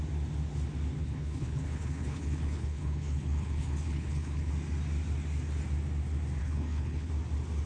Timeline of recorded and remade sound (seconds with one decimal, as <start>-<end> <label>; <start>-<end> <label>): 0.0-1.0 recorded; 1.0-4.5 remade; 4.5-6.4 recorded; 6.4-7.1 remade; 7.1-7.7 recorded

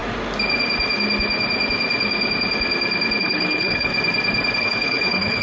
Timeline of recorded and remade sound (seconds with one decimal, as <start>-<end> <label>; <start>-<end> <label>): 0.0-3.2 recorded; 3.2-3.9 remade; 3.9-4.6 recorded; 4.6-5.4 remade